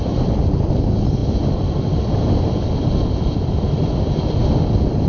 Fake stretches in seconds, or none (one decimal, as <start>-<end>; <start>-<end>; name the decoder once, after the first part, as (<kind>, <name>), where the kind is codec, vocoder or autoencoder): 0.0-5.1 (vocoder, BigVGAN v2)